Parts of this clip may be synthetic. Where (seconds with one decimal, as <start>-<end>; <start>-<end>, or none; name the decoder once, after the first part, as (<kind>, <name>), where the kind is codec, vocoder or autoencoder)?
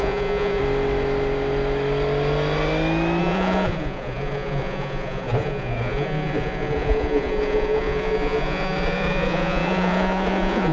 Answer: 0.0-0.6 (vocoder, Vocos); 3.2-10.7